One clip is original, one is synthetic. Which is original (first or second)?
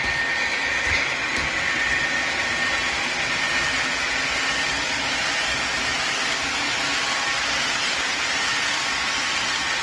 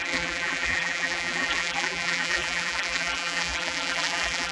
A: first